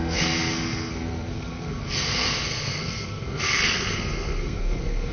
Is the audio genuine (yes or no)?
no